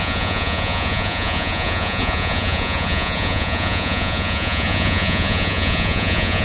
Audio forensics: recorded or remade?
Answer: remade